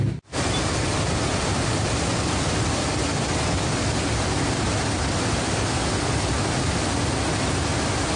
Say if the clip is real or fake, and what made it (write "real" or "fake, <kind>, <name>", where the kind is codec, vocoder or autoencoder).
real